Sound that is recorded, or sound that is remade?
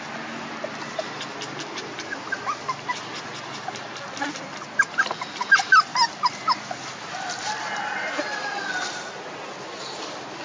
recorded